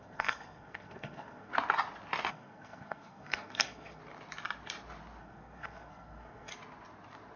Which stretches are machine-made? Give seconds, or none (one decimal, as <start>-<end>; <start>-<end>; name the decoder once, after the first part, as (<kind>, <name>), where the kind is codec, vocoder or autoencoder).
0.0-1.5 (codec, SNAC); 2.3-4.0; 5.2-6.5